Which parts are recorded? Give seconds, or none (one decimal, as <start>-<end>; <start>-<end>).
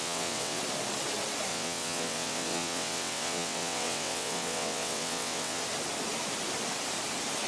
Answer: 0.6-1.5; 5.6-7.5